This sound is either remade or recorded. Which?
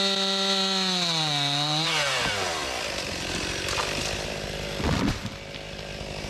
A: remade